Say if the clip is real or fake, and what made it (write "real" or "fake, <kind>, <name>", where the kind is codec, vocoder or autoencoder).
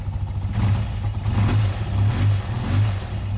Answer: real